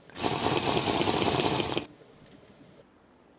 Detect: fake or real fake